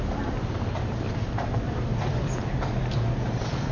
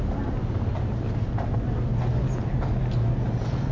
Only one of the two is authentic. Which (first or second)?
second